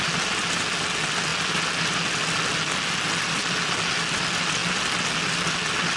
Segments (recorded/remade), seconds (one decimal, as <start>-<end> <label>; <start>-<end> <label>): 0.0-6.0 recorded

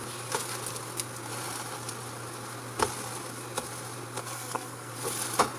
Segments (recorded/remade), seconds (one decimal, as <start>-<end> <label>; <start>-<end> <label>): 0.0-4.2 recorded; 4.2-4.9 remade; 4.9-5.6 recorded

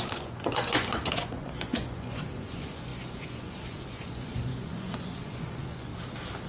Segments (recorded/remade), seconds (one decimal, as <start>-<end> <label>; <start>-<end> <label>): 0.0-5.9 remade; 5.9-6.5 recorded